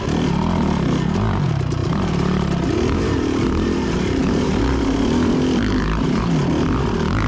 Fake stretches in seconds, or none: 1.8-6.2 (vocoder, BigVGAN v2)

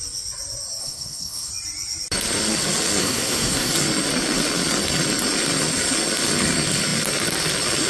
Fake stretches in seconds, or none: 0.8-1.5 (codec, SNAC); 3.0-3.7